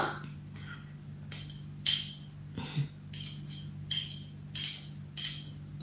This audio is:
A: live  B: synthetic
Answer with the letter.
A